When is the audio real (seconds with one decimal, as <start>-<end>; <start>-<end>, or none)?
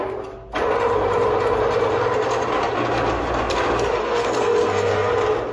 0.0-4.0; 5.1-5.5